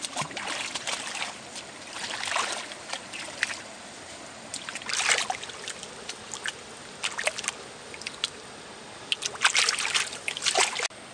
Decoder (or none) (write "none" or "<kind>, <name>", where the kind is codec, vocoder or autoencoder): none